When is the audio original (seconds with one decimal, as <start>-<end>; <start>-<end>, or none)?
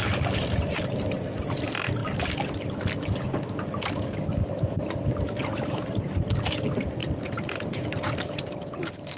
0.0-5.4; 6.3-7.0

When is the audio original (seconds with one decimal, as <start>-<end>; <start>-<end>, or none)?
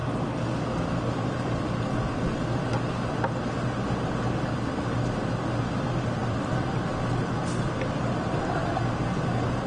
0.0-6.2; 8.0-9.7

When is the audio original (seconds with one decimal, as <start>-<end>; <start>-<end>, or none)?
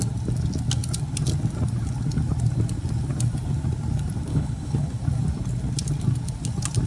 0.0-4.3; 5.0-6.9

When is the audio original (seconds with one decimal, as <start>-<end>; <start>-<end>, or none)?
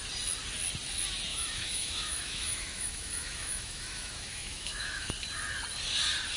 0.0-1.3; 5.1-6.4